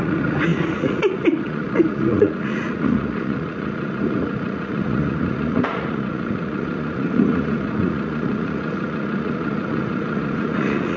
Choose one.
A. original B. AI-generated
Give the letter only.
B